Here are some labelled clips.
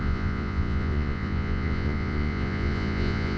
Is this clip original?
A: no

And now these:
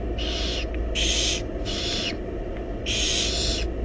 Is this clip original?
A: yes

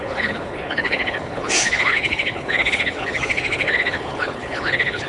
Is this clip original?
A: no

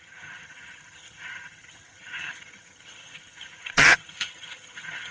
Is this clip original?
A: no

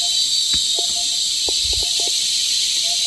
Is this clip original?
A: yes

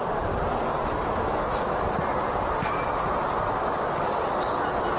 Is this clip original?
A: yes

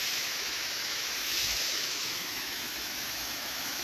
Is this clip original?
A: no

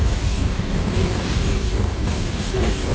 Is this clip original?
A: no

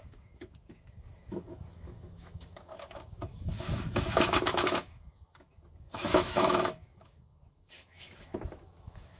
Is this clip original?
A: no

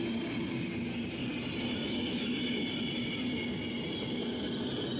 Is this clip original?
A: yes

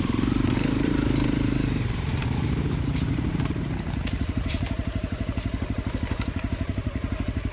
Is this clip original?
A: no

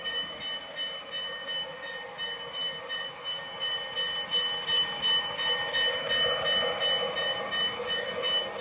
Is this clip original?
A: yes